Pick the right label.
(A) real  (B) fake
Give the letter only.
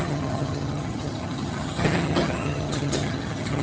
B